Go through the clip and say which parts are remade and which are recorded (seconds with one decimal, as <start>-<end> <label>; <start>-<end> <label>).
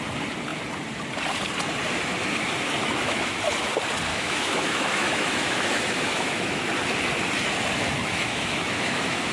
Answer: 0.0-2.8 recorded; 2.8-3.4 remade; 3.4-4.1 recorded; 4.1-6.6 remade; 6.6-8.0 recorded; 8.0-9.3 remade